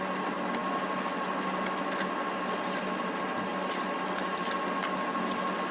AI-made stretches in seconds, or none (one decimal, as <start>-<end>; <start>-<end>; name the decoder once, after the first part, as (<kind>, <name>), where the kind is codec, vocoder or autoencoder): none